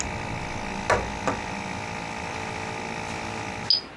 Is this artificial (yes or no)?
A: no